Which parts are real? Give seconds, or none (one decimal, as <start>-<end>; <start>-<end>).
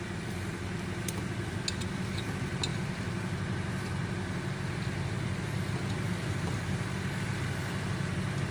0.0-2.7; 3.4-4.0; 8.1-8.5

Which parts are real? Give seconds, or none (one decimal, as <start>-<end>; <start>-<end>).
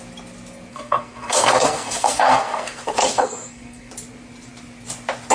0.0-0.7; 3.9-5.3